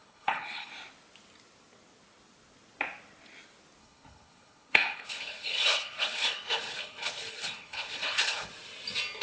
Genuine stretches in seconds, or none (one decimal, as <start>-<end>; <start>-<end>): 0.7-3.8; 8.5-9.2